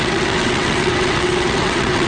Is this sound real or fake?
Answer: fake